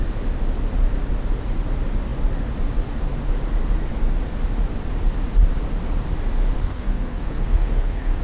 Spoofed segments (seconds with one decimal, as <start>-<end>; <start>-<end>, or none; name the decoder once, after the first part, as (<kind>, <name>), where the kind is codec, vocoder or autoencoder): 6.6-8.2 (codec, SNAC)

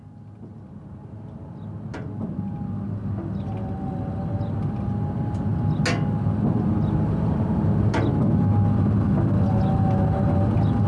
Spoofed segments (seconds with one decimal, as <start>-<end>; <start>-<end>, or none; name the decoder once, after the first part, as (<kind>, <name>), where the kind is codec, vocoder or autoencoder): none

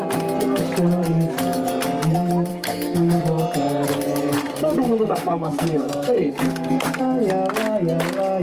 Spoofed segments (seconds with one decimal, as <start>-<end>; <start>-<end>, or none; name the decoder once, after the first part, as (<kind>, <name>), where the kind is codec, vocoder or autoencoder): 2.5-3.2 (codec, SNAC); 4.5-7.0

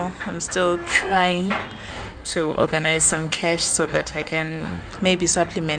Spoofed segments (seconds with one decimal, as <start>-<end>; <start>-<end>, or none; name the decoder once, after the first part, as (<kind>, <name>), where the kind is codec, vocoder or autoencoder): 0.9-1.5 (codec, SNAC); 1.9-4.9

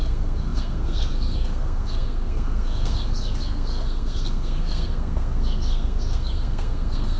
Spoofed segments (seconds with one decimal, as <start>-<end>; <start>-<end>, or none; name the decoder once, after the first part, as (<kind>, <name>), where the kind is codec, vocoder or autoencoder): 0.0-7.2 (codec, SNAC)

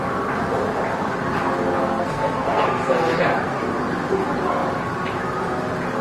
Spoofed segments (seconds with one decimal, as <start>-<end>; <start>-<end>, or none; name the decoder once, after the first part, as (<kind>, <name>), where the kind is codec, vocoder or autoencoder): 1.8-3.6 (codec, SNAC)

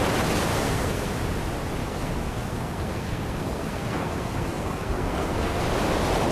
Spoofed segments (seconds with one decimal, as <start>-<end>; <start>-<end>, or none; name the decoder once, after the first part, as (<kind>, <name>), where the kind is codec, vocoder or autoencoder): 0.5-1.1 (codec, SNAC); 1.8-5.6

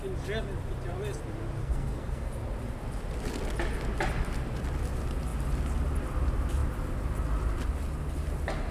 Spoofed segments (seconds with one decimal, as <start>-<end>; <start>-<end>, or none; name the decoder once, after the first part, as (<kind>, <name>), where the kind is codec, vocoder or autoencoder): 1.6-2.3 (codec, SNAC)